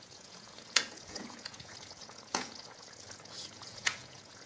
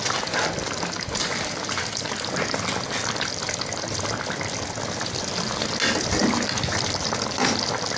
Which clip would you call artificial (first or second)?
first